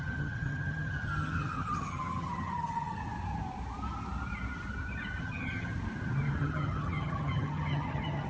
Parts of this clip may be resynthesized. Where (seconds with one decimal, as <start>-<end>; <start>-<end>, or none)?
0.0-3.0; 5.2-5.7; 6.4-8.3